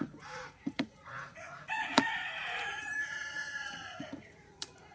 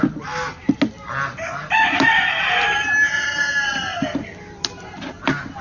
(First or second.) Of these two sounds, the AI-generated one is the first